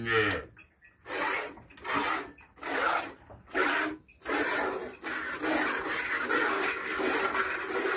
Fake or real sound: real